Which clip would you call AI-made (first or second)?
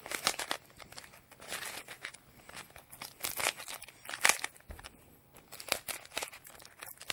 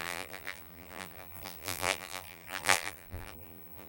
second